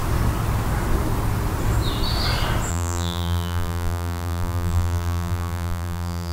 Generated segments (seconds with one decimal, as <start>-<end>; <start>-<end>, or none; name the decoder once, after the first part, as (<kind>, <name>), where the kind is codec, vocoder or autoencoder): 2.7-6.3 (vocoder, BigVGAN v2)